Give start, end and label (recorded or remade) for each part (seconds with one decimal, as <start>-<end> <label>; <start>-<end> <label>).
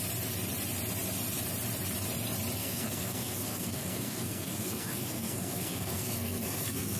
0.0-2.6 recorded; 2.6-7.0 remade